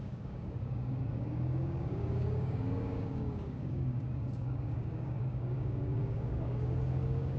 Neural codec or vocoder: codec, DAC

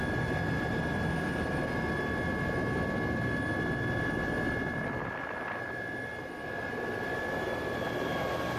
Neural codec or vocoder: none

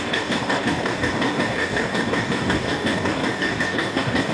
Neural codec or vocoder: codec, DAC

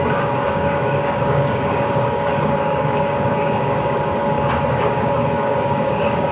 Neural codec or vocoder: codec, DAC